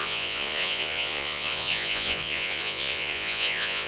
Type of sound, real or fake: fake